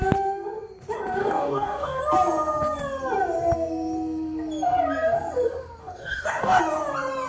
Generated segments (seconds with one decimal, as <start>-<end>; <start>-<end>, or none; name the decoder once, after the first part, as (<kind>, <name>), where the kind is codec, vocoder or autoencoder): 1.2-2.0 (codec, DAC); 5.8-6.6